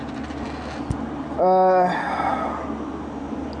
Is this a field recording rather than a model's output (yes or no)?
yes